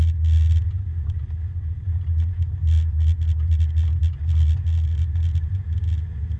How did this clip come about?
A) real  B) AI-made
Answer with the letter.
A